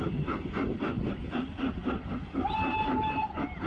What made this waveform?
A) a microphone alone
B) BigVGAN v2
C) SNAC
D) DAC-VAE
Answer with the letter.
A